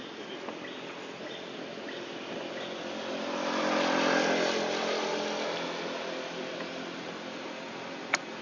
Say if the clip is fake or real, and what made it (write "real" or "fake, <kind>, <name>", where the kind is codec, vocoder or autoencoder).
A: real